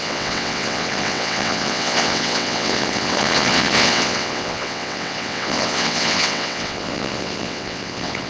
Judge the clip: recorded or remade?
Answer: remade